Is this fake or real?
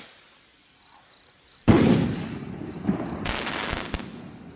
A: real